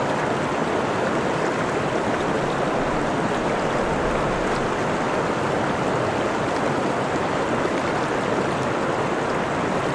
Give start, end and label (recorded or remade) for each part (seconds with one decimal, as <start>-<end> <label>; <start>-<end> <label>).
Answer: 0.0-9.9 recorded